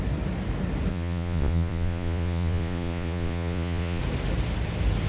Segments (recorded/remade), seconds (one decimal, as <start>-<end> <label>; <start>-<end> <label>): 0.0-0.9 recorded; 0.9-4.0 remade; 4.0-5.1 recorded